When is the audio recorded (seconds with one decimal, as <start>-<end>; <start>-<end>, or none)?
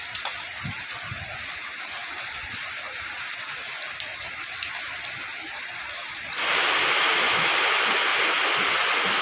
0.0-8.1